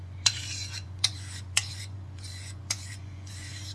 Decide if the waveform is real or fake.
fake